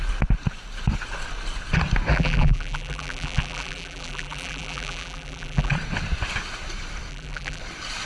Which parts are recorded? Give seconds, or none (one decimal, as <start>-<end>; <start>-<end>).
0.0-2.1; 5.7-7.1; 7.6-8.1